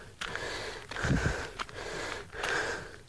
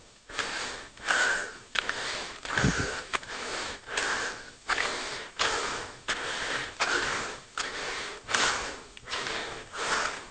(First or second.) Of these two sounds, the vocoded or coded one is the second